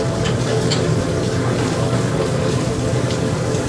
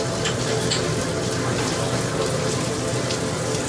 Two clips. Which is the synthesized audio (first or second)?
first